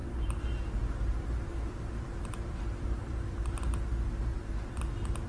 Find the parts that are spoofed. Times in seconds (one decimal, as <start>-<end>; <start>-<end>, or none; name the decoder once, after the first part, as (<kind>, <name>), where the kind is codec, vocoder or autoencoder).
0.0-3.2 (vocoder, BigVGAN v2); 4.3-4.8